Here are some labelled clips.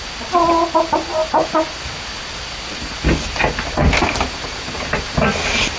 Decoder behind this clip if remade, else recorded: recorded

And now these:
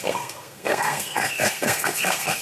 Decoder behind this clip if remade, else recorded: remade, codec, SNAC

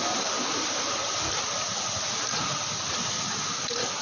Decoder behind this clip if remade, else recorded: recorded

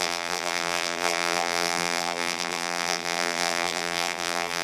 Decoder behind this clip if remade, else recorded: remade, vocoder, BigVGAN v2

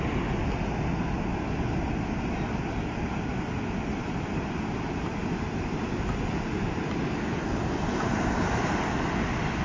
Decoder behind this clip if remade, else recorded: recorded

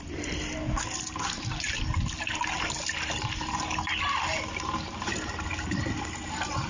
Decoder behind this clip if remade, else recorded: recorded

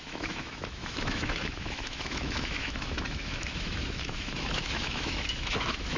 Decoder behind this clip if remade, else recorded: remade, autoencoder, DAC-VAE